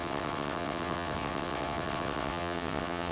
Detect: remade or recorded remade